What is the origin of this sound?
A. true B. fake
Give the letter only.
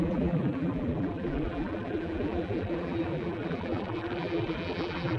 B